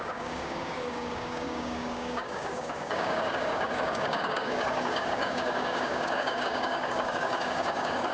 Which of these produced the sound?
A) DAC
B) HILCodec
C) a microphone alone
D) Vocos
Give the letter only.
A